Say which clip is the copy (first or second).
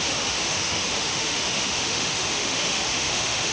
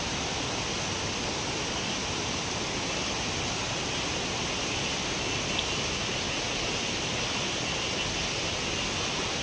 first